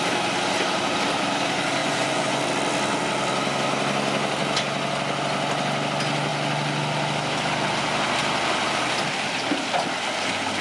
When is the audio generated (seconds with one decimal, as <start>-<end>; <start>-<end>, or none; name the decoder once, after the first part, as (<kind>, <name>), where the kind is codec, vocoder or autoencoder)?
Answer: 1.8-2.4 (vocoder, Vocos)